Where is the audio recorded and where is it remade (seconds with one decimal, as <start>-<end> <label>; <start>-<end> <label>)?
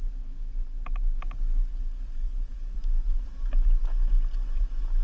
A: 0.0-1.7 recorded; 1.7-3.3 remade; 3.3-5.0 recorded